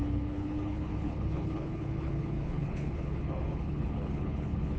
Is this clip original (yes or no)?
no